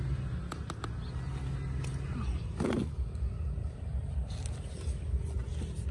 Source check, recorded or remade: recorded